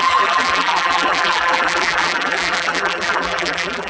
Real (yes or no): no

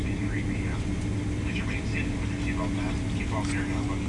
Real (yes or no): yes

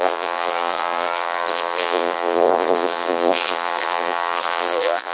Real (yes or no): no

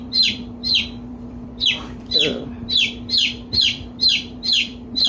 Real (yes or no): no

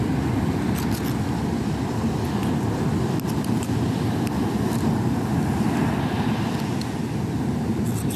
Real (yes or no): yes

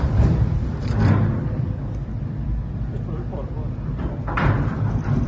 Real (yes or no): no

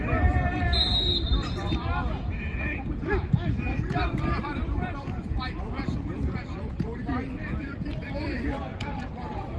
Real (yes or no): no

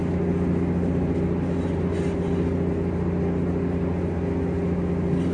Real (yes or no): yes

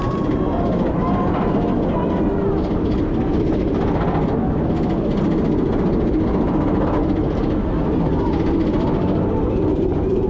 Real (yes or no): yes